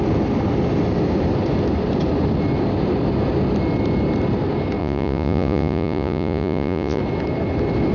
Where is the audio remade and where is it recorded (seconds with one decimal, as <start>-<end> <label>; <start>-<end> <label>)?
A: 0.0-4.8 recorded; 4.8-7.0 remade; 7.0-7.9 recorded